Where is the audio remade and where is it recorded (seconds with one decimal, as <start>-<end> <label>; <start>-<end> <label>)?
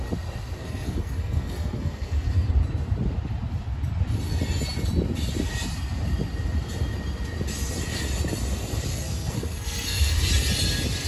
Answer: 0.0-0.6 recorded; 0.6-2.5 remade; 2.5-8.9 recorded; 8.9-10.2 remade; 10.2-11.1 recorded